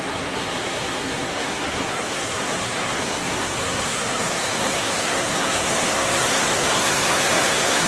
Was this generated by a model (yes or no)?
yes